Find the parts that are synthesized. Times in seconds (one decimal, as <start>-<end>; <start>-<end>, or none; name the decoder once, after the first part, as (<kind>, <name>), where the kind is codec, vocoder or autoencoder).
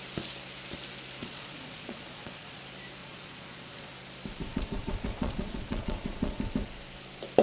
1.2-2.6 (vocoder, Vocos); 3.0-3.9; 4.4-6.4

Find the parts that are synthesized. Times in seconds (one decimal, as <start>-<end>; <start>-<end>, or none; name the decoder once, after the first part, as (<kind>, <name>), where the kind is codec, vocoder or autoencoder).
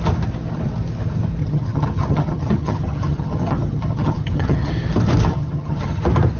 1.4-4.7 (vocoder, HiFi-GAN); 5.3-6.0